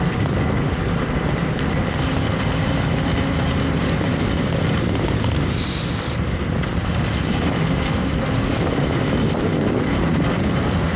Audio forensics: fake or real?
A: real